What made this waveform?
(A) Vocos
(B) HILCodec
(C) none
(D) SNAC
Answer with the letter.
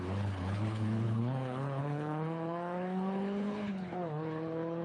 B